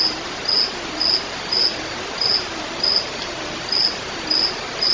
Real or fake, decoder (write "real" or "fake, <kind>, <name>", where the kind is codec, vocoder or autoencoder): real